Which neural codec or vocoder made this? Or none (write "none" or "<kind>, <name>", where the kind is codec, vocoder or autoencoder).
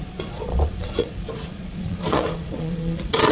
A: vocoder, Vocos